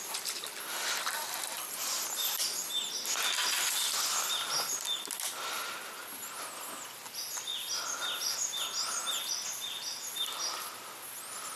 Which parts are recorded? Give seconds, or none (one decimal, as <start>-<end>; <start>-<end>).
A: 0.0-11.6